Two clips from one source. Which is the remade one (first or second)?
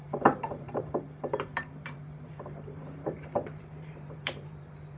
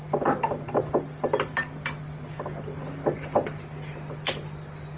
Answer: first